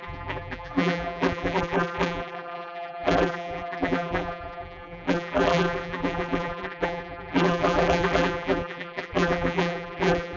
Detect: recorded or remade remade